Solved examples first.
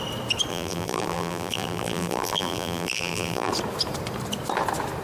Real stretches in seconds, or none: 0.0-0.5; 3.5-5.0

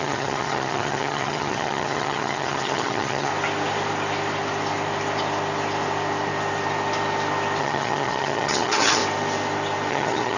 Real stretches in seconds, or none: 3.3-7.6; 9.0-9.9